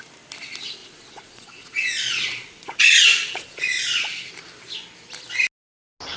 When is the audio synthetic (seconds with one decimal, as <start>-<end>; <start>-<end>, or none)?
0.8-4.3